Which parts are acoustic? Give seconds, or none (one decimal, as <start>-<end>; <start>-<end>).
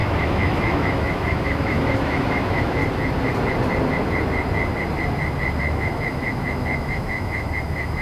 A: 2.8-5.6